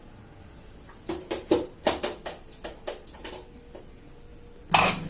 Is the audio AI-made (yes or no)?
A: no